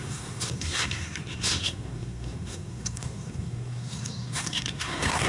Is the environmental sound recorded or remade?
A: remade